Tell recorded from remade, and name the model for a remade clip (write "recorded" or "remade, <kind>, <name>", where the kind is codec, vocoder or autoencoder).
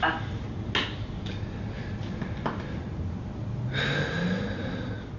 recorded